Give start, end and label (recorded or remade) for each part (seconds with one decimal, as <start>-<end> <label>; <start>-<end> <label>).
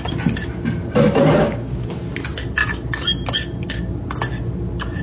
0.0-1.4 recorded; 1.4-1.9 remade; 1.9-5.0 recorded